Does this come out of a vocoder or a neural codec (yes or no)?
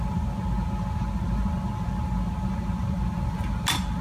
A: no